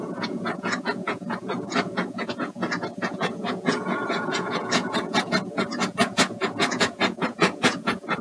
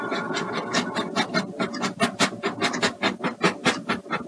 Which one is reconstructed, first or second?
first